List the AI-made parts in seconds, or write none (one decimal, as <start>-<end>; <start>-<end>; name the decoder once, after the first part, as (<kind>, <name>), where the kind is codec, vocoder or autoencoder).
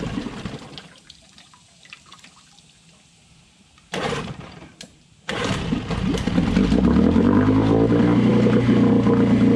3.6-6.3 (vocoder, BigVGAN v2)